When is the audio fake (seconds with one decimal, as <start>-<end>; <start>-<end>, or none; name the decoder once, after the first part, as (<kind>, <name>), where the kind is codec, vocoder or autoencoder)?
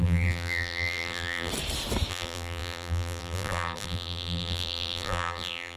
0.0-1.5 (vocoder, BigVGAN v2); 2.1-5.8